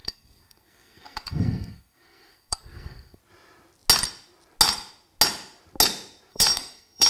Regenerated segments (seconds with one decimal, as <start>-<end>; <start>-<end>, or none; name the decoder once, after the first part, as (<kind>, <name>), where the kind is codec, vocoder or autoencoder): 0.0-3.2 (codec, SNAC); 6.3-7.1